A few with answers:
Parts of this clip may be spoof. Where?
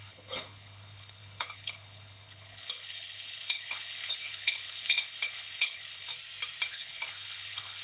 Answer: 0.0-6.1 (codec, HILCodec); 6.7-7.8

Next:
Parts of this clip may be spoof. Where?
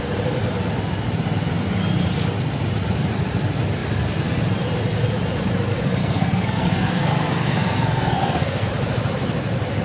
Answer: 6.0-8.7 (codec, SNAC)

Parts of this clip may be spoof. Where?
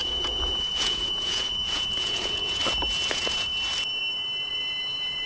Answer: 0.0-2.6 (vocoder, Vocos); 3.1-3.5; 4.5-5.3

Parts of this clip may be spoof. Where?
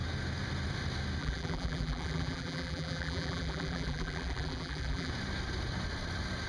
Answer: 1.2-5.1 (vocoder, BigVGAN v2)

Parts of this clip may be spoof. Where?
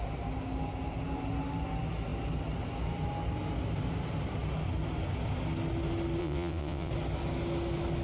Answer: 6.2-6.9 (vocoder, WaveNeXt)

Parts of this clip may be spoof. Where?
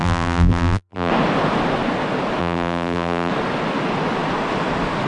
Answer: 0.0-1.1 (vocoder, BigVGAN v2); 2.4-3.3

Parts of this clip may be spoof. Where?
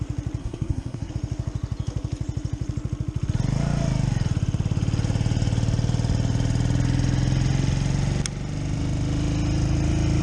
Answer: 0.4-1.1 (codec, SNAC)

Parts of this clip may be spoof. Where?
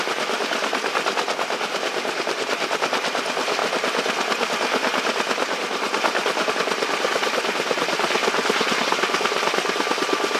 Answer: none